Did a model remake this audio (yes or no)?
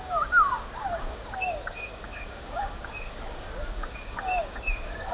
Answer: yes